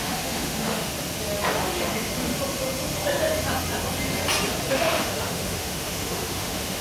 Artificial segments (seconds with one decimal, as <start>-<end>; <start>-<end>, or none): 0.0-0.9; 1.6-2.1; 4.7-6.8